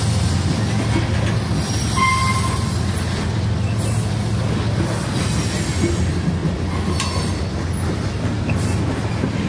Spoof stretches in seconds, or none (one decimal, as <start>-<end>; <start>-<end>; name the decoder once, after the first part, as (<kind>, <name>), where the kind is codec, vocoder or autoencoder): none